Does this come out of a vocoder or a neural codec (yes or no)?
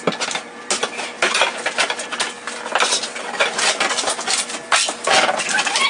no